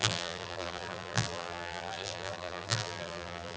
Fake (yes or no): yes